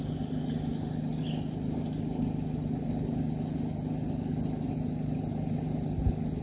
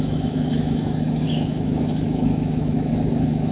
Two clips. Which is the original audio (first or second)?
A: first